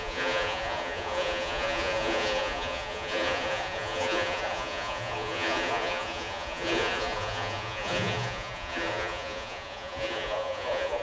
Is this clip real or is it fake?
fake